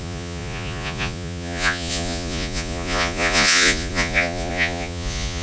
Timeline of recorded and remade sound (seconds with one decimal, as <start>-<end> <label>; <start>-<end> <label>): 0.0-5.4 remade